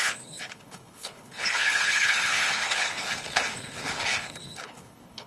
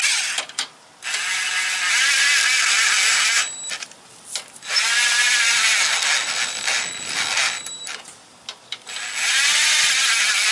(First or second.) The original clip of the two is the second